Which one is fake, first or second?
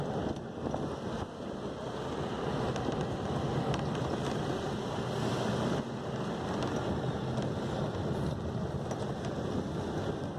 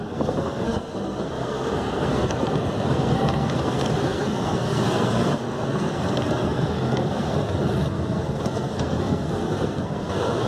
second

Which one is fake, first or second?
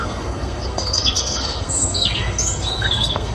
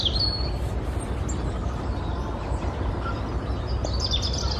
first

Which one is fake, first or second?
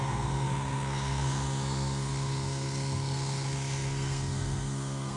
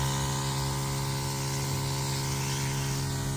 first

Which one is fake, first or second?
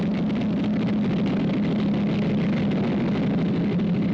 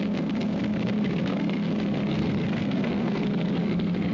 second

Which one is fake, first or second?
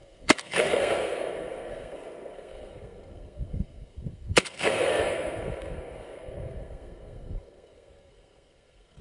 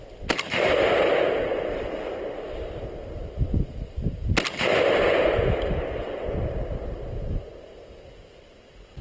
first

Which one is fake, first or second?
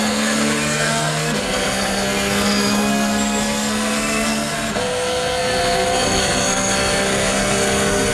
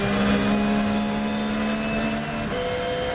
first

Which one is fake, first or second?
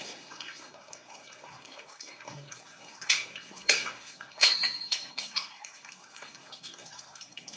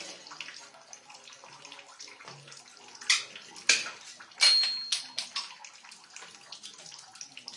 first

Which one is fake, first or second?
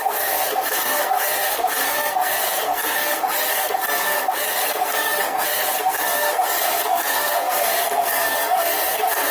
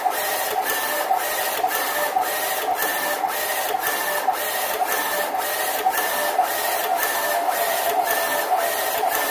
first